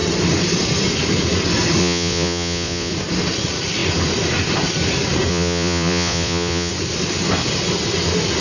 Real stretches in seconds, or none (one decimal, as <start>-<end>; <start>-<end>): 0.0-1.8; 2.9-5.3; 6.7-8.4